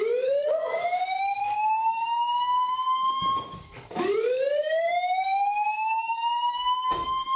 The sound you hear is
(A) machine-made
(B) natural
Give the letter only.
A